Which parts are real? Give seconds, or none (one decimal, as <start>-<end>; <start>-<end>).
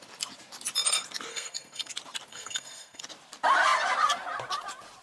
0.0-1.3; 1.9-2.3; 3.0-5.0